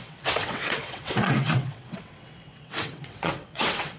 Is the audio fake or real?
fake